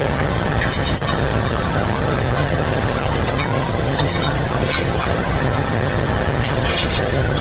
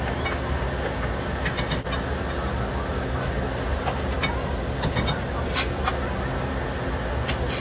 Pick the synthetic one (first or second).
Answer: first